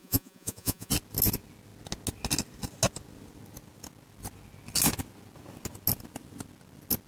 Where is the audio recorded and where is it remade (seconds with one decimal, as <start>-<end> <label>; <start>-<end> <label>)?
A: 0.0-0.9 remade; 0.9-7.1 recorded